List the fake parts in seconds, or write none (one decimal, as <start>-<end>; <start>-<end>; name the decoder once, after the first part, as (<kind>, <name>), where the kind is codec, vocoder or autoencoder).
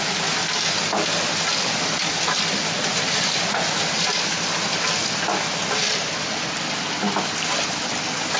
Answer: none